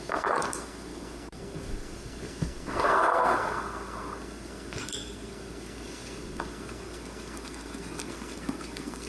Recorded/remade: remade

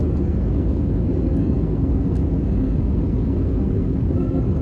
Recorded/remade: remade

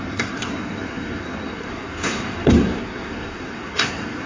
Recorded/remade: remade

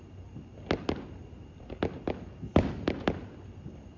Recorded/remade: recorded